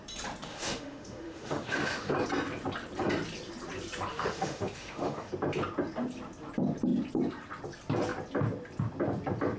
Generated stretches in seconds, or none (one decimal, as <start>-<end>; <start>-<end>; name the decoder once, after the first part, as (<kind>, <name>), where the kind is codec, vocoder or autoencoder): 0.5-2.1 (autoencoder, DAC-VAE); 4.1-5.3